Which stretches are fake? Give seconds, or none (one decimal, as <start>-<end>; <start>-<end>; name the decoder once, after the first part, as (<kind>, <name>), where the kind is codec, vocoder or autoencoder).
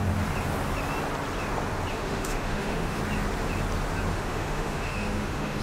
1.9-3.0 (autoencoder, DAC-VAE); 4.1-5.6